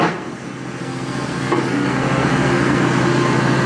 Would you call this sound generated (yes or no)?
yes